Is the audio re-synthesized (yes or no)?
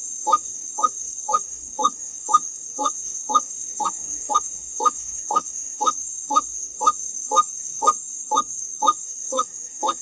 yes